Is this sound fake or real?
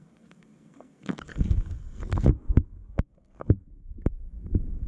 fake